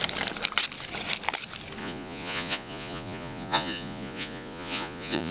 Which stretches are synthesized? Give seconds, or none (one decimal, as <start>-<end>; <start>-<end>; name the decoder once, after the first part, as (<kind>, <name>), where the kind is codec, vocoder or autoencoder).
1.8-5.3 (vocoder, Vocos)

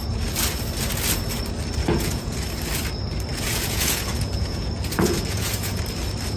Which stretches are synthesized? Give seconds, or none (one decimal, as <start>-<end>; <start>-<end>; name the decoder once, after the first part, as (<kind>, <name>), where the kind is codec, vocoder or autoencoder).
1.8-2.4 (vocoder, Vocos); 3.3-5.8

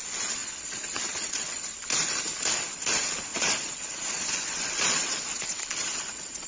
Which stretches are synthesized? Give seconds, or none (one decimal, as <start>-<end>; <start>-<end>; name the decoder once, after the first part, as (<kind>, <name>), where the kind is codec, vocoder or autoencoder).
0.4-1.6 (vocoder, Vocos); 3.3-6.5

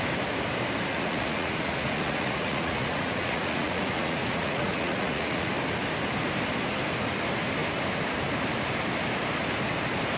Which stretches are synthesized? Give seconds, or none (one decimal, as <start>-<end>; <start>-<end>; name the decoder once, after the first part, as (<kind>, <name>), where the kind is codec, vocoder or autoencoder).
0.9-5.5 (vocoder, Vocos)

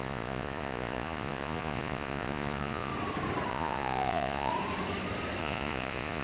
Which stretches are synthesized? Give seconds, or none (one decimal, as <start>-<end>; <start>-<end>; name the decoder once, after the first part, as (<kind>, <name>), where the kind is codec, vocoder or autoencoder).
0.0-2.9 (vocoder, Vocos); 3.5-4.5; 5.4-6.2

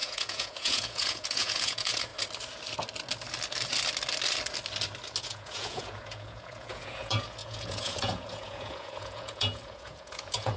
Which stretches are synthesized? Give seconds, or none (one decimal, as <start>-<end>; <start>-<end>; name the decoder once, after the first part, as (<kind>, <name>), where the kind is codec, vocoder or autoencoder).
0.0-2.1 (vocoder, Vocos); 5.2-10.6

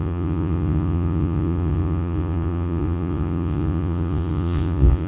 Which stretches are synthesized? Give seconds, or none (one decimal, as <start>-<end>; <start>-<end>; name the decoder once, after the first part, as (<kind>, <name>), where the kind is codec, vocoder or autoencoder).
0.0-5.1 (vocoder, Vocos)

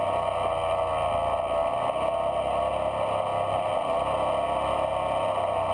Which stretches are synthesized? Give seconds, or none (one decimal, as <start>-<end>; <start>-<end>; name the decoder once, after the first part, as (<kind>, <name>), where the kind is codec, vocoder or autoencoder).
none